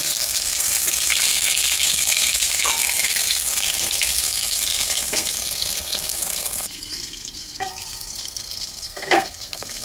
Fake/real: fake